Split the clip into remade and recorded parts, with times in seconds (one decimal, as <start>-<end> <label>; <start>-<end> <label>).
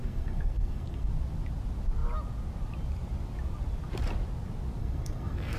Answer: 0.0-1.1 remade; 1.1-4.8 recorded; 4.8-5.6 remade